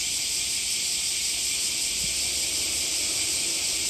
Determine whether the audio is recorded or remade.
recorded